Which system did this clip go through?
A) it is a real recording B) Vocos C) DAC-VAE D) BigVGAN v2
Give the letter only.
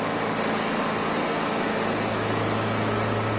A